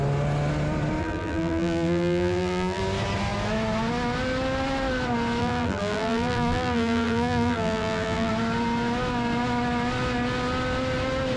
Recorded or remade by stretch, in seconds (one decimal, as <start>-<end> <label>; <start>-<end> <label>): 0.0-1.0 recorded; 1.0-2.8 remade; 2.8-5.4 recorded; 5.4-8.3 remade; 8.3-11.4 recorded